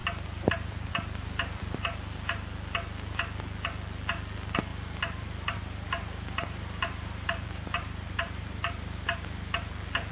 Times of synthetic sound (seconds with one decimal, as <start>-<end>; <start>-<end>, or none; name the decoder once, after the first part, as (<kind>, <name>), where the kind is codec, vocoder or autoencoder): 0.0-0.9 (vocoder, BigVGAN v2); 4.7-9.7